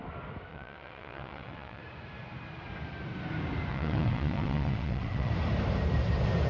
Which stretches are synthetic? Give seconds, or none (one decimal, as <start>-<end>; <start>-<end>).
0.5-1.8; 3.7-5.3